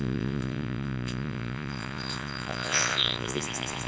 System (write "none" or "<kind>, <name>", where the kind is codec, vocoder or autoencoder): vocoder, Vocos